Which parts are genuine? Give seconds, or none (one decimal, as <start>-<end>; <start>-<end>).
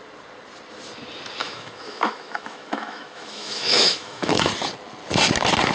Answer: 0.0-1.4; 4.5-5.7